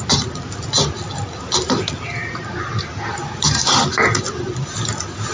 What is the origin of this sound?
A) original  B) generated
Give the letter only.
A